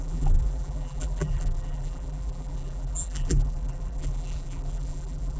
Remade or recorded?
remade